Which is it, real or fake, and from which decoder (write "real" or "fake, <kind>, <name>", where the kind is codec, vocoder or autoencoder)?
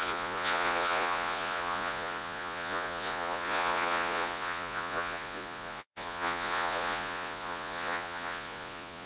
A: fake, vocoder, Vocos